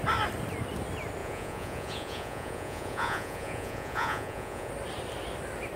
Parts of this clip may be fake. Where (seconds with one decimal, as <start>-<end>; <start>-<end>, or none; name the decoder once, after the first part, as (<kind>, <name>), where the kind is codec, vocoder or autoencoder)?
1.2-4.7 (vocoder, Vocos)